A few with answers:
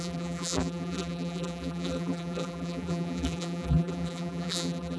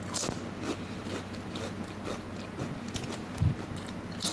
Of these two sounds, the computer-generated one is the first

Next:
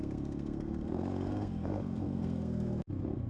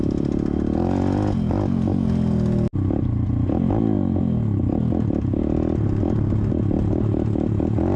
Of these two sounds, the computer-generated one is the first